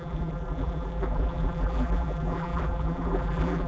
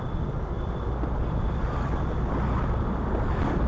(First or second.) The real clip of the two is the second